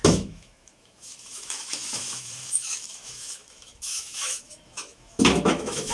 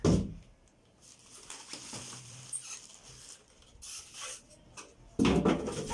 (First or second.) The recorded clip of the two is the second